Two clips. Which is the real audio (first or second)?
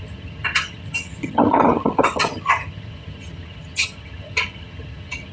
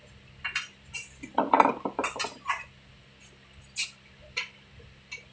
second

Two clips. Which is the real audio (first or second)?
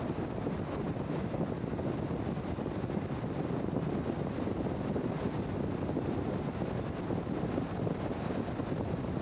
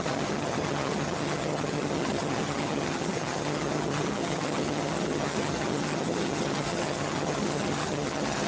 first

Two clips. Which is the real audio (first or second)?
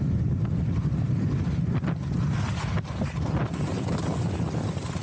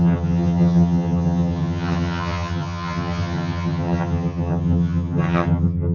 first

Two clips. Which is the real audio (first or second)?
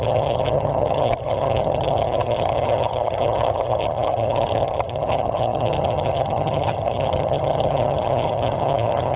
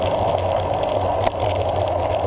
second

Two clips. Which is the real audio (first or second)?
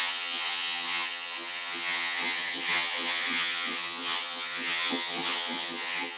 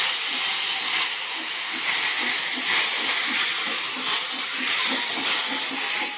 second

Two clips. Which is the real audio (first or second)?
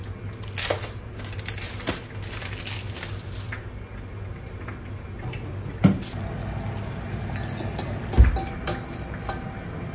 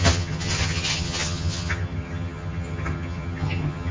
first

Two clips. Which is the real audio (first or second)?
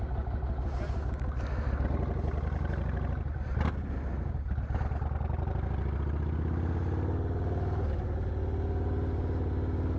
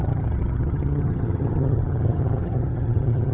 first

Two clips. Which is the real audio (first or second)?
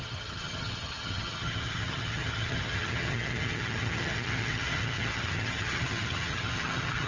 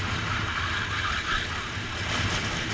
second